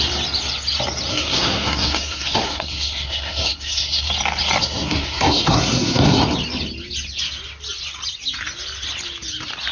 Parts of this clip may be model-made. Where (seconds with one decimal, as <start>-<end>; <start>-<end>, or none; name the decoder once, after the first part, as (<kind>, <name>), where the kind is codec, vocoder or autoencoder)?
1.1-4.1 (codec, SNAC); 4.6-6.2